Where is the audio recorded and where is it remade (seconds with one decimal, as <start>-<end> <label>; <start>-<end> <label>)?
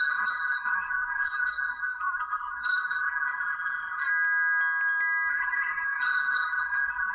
0.0-4.1 remade; 4.1-5.3 recorded; 5.3-7.1 remade